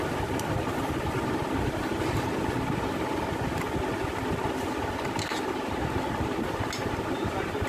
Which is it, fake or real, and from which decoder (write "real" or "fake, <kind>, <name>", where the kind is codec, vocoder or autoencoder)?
real